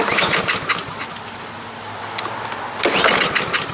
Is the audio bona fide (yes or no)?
yes